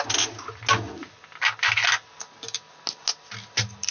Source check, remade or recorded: recorded